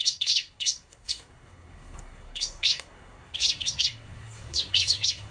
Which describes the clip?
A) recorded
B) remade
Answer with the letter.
B